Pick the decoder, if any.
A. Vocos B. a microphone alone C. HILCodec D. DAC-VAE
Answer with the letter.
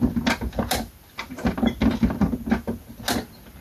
B